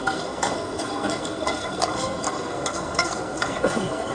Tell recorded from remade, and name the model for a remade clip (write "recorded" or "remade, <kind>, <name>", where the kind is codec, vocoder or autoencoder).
remade, codec, SNAC